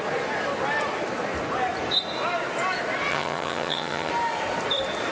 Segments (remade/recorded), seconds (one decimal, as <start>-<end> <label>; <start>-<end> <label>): 0.0-3.1 recorded; 3.1-4.1 remade; 4.1-5.1 recorded